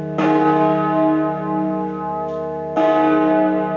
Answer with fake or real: real